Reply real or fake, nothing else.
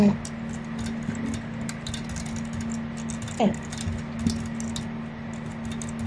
real